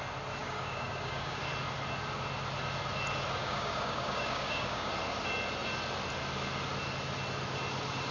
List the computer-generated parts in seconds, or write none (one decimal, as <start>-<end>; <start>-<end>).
0.4-1.4; 3.4-4.9